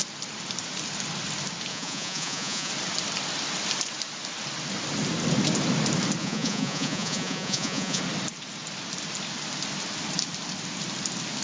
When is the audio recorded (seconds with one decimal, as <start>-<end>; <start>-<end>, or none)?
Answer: 0.0-1.7; 2.7-6.2; 8.0-11.4